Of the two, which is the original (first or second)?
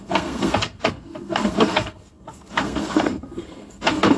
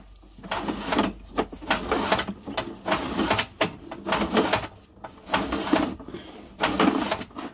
second